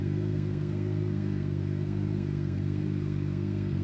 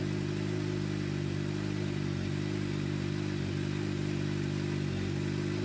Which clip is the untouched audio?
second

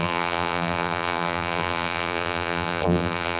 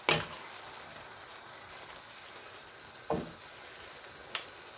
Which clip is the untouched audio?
second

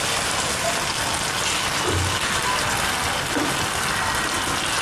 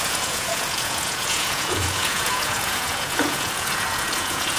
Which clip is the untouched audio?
first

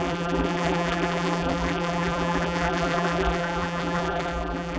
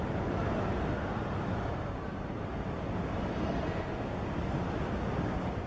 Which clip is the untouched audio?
second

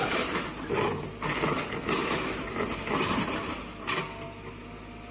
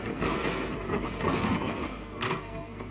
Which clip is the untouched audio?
first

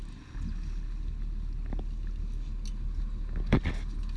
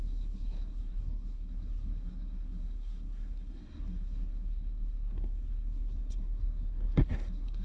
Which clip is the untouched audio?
first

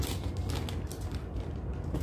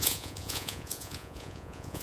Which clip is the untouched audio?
first